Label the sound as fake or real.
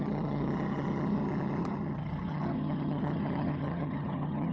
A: fake